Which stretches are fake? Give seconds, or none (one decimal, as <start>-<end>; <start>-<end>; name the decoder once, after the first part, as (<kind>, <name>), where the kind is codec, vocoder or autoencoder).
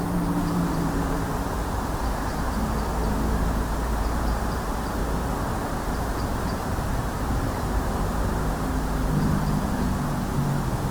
0.0-5.0 (vocoder, BigVGAN v2); 5.6-8.3